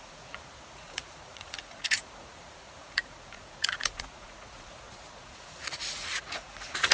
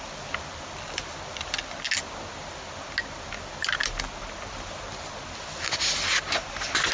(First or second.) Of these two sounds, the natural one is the second